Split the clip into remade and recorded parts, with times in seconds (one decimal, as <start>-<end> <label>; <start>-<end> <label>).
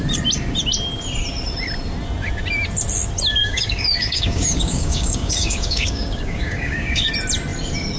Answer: 0.0-3.4 recorded; 3.4-7.1 remade; 7.1-8.0 recorded